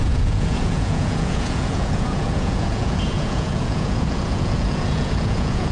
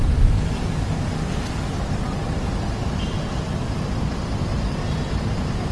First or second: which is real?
second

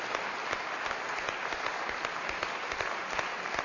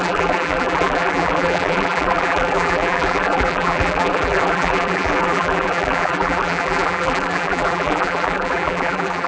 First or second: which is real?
first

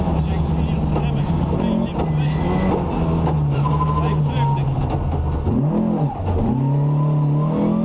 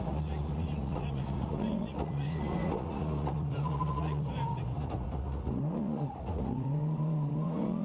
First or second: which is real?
first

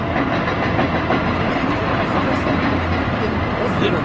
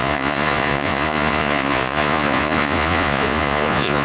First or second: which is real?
first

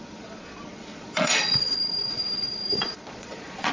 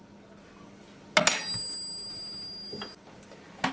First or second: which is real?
second